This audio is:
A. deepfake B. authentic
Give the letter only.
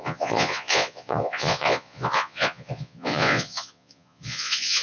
A